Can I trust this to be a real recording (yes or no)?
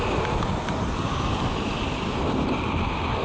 yes